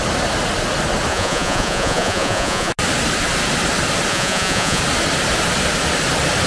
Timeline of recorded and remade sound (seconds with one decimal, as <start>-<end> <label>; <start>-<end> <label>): 0.0-1.1 recorded; 1.1-2.7 remade; 2.7-4.1 recorded; 4.1-4.8 remade; 4.8-6.5 recorded